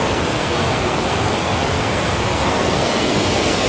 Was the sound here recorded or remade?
remade